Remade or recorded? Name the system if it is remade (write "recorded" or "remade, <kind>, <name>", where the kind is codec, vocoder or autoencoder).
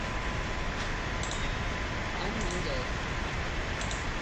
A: recorded